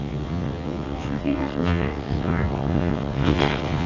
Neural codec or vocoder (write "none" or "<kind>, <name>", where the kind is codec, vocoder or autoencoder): vocoder, WaveNeXt